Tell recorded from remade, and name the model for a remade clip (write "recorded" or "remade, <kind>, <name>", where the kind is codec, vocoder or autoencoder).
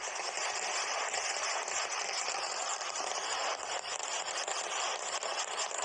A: remade, vocoder, BigVGAN v2